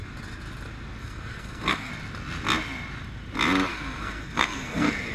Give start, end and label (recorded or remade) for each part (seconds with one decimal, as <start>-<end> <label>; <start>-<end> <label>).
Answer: 0.0-1.0 recorded; 1.0-1.9 remade; 1.9-3.7 recorded; 3.7-5.1 remade

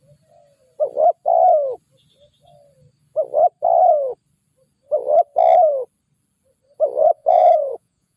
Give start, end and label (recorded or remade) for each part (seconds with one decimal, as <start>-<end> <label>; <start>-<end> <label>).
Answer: 0.0-7.0 recorded; 7.0-8.2 remade